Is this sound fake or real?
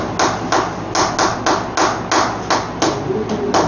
real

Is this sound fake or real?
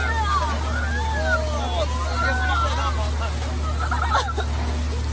real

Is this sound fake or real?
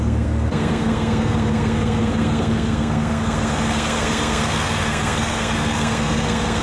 fake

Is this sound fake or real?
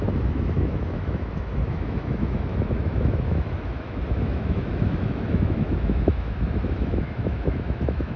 fake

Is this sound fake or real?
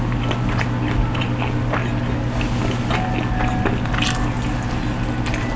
real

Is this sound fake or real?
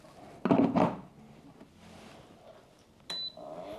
real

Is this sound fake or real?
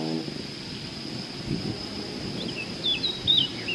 real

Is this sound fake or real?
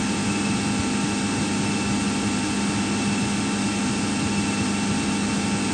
real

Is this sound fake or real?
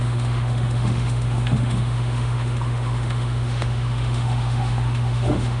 fake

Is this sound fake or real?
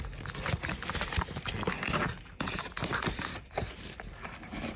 real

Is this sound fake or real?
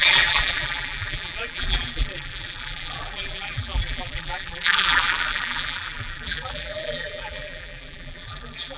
fake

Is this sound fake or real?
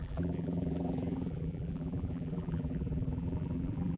fake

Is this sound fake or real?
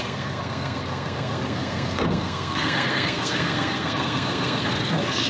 fake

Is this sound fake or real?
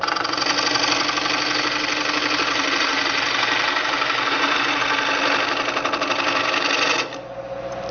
real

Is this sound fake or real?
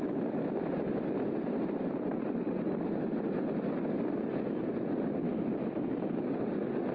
real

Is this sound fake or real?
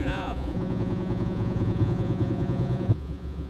fake